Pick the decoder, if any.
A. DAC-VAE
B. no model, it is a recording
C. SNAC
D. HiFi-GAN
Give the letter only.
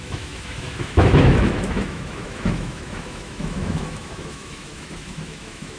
A